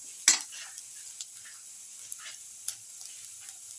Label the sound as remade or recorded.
recorded